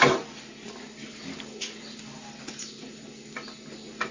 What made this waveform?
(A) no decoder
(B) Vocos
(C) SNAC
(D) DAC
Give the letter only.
A